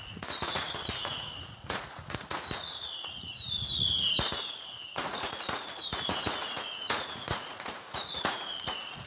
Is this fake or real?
fake